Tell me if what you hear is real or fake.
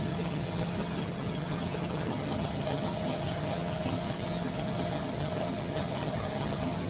fake